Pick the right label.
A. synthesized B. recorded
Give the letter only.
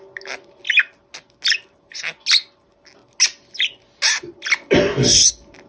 B